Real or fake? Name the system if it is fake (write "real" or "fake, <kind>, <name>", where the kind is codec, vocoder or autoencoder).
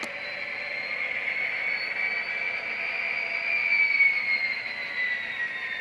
real